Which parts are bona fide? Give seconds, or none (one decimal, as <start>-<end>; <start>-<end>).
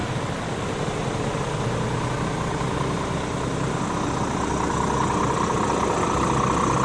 0.8-6.8